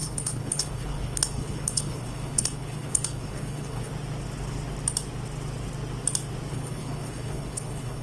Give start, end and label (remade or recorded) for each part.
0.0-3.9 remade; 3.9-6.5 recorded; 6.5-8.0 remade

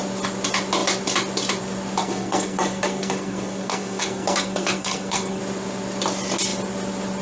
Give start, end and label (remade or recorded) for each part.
0.0-2.0 recorded; 2.0-5.4 remade; 5.4-7.2 recorded

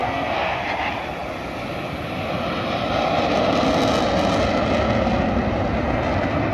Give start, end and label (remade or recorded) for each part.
0.0-0.6 remade; 0.6-6.5 recorded